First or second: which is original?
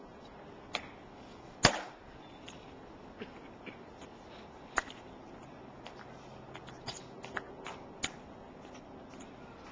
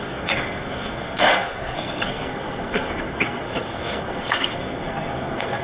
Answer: first